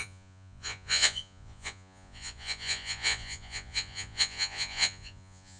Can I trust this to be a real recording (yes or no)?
no